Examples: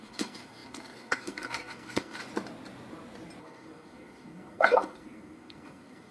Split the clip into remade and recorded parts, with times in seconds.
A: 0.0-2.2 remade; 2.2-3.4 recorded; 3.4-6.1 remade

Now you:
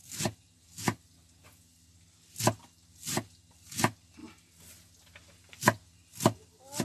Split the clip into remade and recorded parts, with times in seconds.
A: 0.0-6.8 recorded